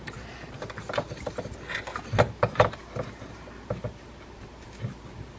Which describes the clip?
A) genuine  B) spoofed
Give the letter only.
B